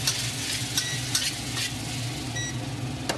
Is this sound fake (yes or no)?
no